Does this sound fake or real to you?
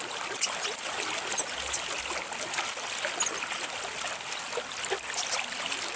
real